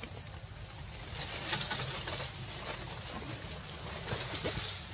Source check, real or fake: real